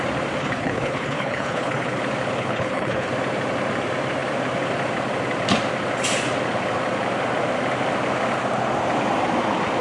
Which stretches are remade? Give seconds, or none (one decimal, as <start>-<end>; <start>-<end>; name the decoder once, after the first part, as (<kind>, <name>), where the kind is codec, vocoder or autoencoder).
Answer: 0.4-2.0 (codec, HILCodec); 2.4-3.1